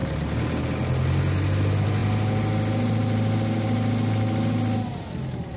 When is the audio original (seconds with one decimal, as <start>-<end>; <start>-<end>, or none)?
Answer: 0.0-5.6